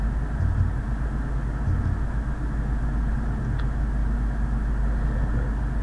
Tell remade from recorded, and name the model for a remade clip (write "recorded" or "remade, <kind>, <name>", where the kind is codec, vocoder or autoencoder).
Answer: recorded